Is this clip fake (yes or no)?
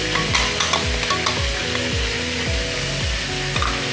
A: no